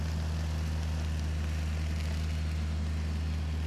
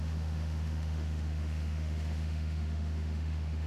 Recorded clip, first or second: first